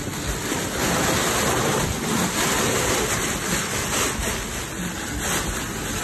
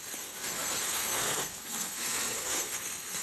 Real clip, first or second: first